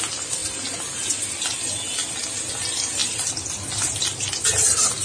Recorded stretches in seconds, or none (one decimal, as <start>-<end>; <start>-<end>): 0.0-5.0